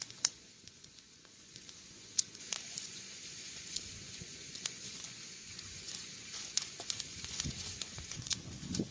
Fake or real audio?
fake